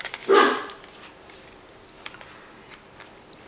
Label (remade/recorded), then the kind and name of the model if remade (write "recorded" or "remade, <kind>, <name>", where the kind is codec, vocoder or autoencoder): recorded